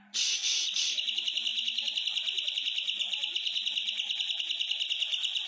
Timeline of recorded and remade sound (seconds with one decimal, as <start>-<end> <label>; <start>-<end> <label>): 0.0-5.5 remade